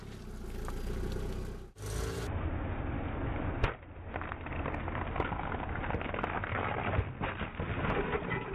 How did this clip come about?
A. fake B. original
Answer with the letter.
B